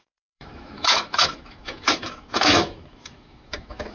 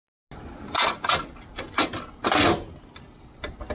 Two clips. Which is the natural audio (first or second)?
second